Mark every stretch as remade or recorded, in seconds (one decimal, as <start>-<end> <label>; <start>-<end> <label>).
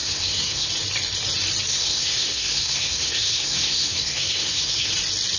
0.0-0.7 remade; 0.7-1.7 recorded; 1.7-4.9 remade; 4.9-5.4 recorded